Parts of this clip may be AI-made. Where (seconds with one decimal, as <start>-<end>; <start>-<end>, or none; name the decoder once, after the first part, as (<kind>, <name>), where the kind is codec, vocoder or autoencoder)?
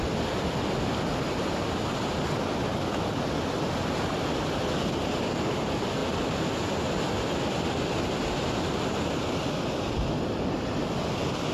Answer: none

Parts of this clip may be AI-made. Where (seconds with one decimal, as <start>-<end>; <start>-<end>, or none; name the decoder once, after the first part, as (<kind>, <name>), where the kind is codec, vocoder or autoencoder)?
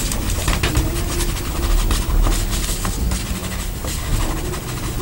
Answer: none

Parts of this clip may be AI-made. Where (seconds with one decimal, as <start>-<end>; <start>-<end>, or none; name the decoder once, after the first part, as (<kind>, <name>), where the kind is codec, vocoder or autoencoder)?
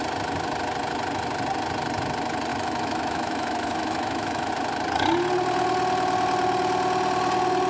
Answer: 2.5-4.5 (autoencoder, DAC-VAE)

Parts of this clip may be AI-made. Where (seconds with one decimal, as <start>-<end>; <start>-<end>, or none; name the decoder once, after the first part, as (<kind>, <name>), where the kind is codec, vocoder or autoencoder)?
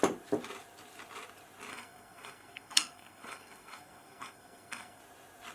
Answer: 1.7-5.0 (codec, SNAC)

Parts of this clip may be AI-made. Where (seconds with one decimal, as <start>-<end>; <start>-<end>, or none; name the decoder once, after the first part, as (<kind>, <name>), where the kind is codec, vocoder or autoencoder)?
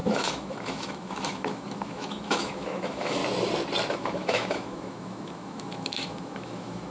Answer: 0.0-3.2 (autoencoder, DAC-VAE); 3.9-6.9